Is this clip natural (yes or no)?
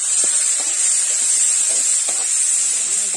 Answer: yes